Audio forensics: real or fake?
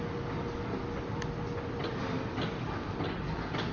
real